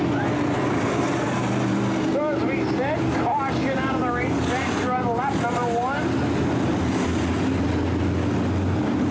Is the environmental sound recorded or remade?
recorded